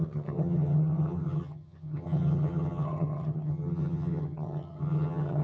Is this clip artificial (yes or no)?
yes